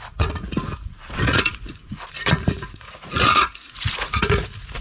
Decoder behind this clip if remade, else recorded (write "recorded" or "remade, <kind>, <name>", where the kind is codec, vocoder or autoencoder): remade, vocoder, Vocos